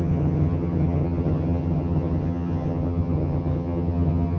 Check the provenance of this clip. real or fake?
fake